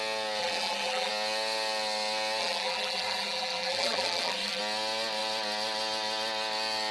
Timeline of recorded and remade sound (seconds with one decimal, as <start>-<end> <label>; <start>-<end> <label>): 0.0-0.4 recorded; 0.4-1.1 remade; 1.1-2.4 recorded; 2.4-4.6 remade; 4.6-6.9 recorded

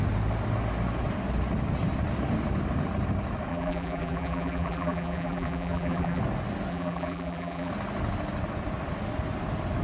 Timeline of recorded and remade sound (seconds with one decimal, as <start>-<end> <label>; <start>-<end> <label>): 0.0-3.5 recorded; 3.5-6.2 remade; 6.2-6.7 recorded; 6.7-7.7 remade; 7.7-9.8 recorded

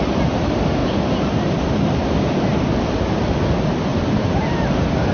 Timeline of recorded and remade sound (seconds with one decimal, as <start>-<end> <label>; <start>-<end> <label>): 0.0-3.9 recorded; 3.9-5.1 remade

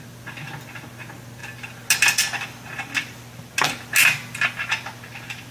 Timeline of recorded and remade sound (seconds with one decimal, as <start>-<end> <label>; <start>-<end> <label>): 0.0-5.5 recorded